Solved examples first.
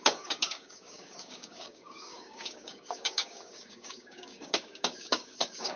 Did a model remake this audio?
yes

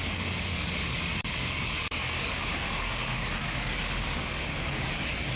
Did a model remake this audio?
yes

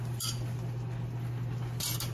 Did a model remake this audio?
no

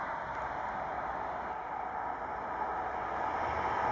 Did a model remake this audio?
no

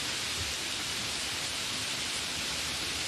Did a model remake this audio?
no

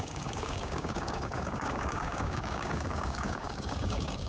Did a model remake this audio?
yes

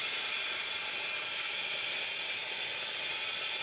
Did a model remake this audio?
no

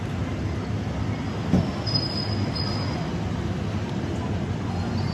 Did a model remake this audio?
no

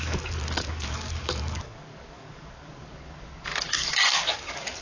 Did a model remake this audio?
yes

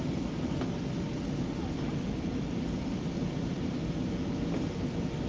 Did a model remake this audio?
no